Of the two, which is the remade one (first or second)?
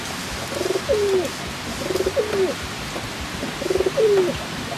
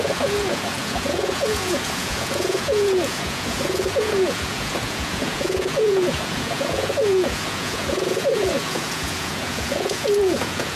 second